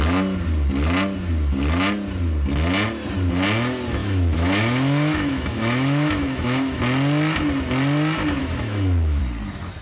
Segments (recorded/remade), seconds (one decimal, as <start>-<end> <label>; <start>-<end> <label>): 0.0-4.0 recorded; 4.0-6.8 remade; 6.8-8.4 recorded; 8.4-9.2 remade; 9.2-9.8 recorded